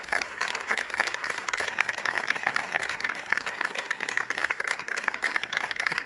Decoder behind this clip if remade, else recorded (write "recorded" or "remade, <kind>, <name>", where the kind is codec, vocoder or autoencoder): remade, codec, SNAC